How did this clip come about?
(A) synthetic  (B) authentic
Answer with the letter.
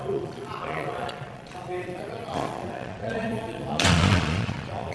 A